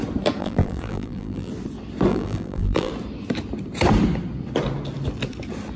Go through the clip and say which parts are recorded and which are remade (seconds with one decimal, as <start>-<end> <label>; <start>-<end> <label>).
0.0-0.4 recorded; 0.4-1.5 remade; 1.5-2.1 recorded; 2.1-2.9 remade; 2.9-5.8 recorded